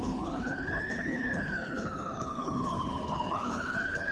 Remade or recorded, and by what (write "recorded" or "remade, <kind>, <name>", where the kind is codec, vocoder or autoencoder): remade, codec, HILCodec